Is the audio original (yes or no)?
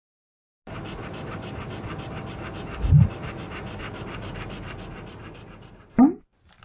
yes